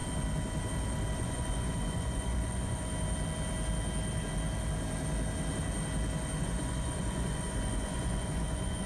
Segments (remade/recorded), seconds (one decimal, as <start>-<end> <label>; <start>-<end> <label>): 0.0-1.2 recorded; 1.2-2.9 remade; 2.9-6.4 recorded; 6.4-8.9 remade